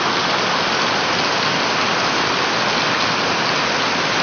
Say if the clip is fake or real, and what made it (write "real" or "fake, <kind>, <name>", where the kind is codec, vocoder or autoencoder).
real